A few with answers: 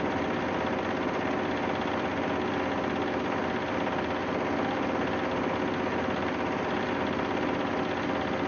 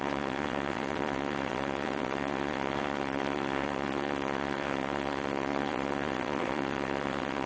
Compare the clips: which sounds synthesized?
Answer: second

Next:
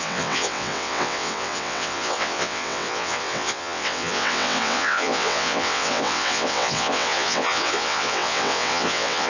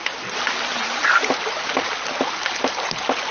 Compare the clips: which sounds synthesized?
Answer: first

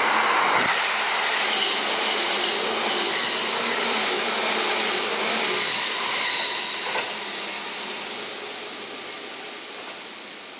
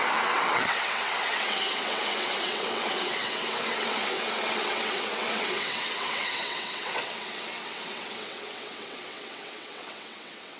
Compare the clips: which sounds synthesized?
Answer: second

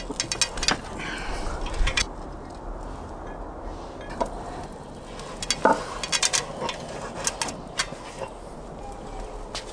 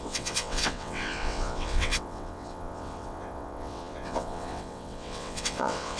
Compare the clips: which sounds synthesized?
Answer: second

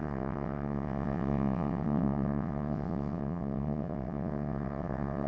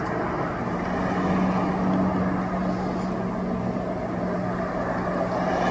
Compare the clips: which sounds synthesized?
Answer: first